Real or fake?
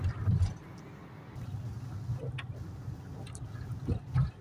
real